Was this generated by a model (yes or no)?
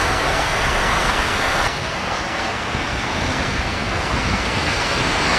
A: yes